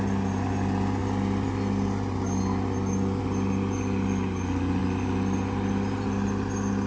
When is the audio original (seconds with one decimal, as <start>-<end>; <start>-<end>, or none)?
0.0-6.9